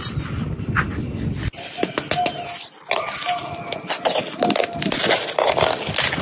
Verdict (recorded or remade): recorded